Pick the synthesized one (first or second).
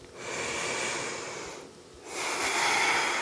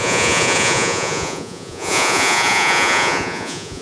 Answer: second